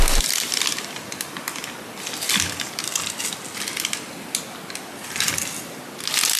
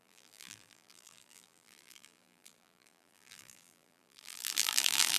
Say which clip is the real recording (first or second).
first